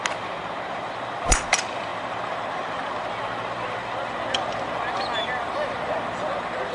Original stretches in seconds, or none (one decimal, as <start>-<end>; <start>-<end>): 0.0-0.7